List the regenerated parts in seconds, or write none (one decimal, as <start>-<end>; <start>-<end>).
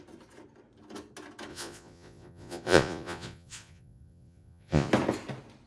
1.5-4.9